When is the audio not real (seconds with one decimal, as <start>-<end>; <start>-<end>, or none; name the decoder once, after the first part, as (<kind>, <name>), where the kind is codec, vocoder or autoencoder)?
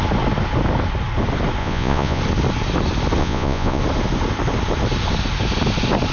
1.6-2.2 (vocoder, Vocos); 3.2-3.8